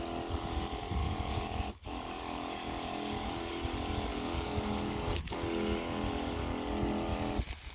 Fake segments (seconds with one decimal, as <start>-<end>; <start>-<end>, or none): 1.0-3.5; 4.1-5.1